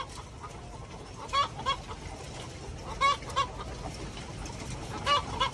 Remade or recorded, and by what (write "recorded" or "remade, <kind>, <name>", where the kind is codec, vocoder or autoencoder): recorded